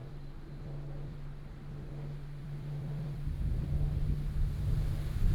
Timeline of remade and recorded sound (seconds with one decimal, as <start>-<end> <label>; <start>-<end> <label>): 0.0-1.9 remade; 1.9-2.4 recorded; 2.4-3.7 remade; 3.7-5.3 recorded